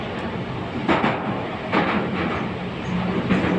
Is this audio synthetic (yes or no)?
no